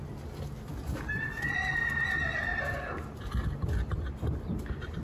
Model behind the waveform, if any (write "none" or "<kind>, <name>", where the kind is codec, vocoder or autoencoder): none